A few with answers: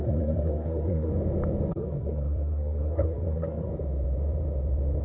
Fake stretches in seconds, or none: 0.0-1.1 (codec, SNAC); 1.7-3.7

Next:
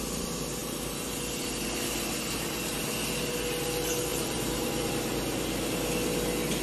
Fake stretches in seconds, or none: 4.1-4.9 (vocoder, BigVGAN v2)